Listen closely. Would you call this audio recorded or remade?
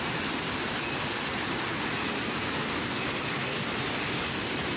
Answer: recorded